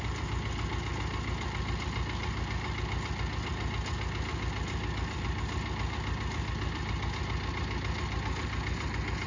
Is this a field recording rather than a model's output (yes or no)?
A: yes